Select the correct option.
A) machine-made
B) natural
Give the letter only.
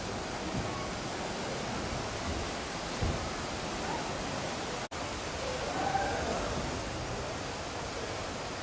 B